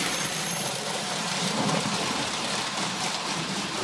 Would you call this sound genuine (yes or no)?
no